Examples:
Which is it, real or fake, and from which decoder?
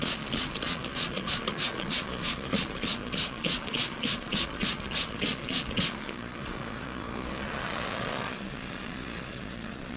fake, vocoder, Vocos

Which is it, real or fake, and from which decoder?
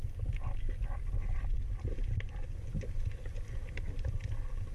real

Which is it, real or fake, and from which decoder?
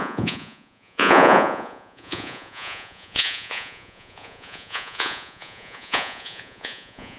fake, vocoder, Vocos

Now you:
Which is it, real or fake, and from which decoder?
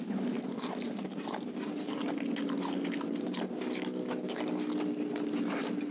real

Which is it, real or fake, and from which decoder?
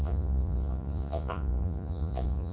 fake, vocoder, Vocos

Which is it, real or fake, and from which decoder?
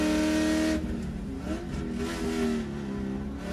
real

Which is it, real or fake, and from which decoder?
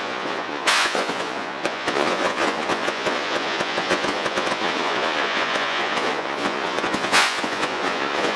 fake, vocoder, Vocos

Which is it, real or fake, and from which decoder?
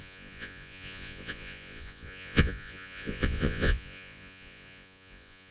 fake, vocoder, Vocos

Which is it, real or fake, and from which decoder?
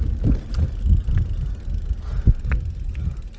real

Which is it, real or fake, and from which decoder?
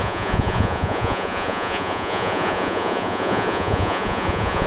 fake, vocoder, Vocos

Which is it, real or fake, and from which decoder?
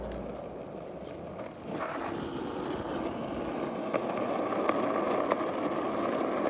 real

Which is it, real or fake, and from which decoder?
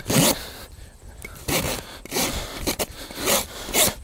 real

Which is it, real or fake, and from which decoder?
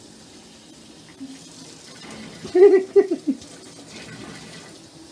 real